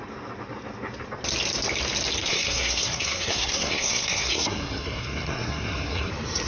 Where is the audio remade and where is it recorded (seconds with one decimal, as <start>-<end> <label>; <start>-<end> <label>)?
0.0-2.2 recorded; 2.2-6.1 remade; 6.1-6.5 recorded